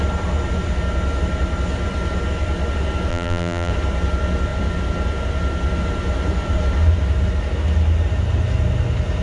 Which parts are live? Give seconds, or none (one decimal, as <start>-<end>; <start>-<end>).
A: 0.0-3.1; 3.7-9.2